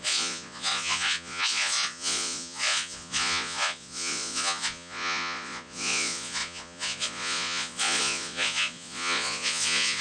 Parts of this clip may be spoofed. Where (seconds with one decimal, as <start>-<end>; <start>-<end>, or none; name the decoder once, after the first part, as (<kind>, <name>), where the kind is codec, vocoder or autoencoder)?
0.0-10.0 (vocoder, Vocos)